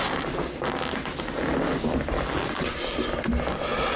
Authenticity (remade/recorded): recorded